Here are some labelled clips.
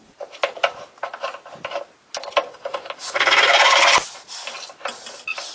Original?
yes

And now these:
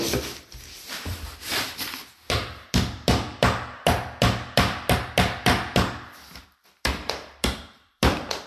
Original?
no